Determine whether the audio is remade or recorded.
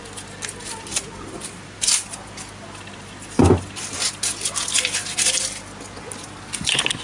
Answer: recorded